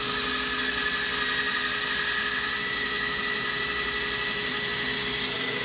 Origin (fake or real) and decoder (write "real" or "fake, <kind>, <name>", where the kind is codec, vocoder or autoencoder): real